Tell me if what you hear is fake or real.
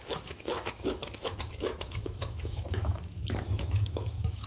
fake